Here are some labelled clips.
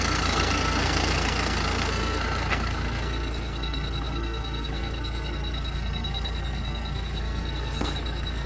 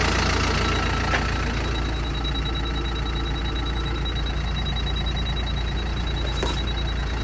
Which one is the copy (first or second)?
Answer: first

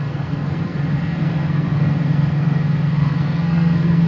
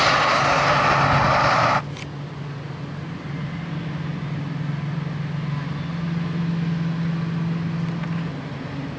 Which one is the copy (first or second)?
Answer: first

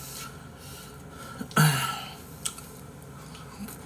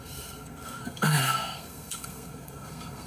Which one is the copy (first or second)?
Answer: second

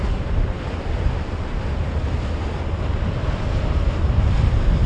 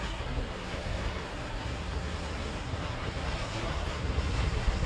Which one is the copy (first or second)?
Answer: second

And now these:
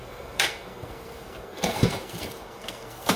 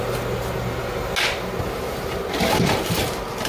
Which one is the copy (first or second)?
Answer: first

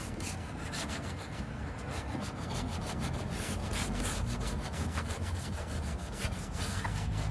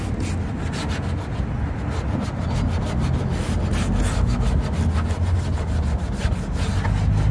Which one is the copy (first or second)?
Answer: first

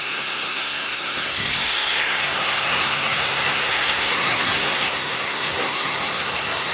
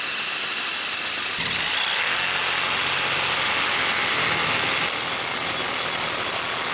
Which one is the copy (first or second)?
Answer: first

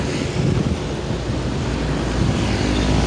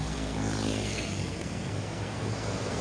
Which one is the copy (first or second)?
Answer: second